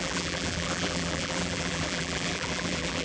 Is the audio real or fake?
fake